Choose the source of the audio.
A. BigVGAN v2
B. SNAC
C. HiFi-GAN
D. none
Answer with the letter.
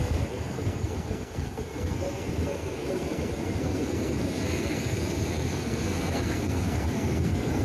B